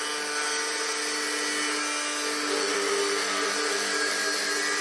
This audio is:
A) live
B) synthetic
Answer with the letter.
A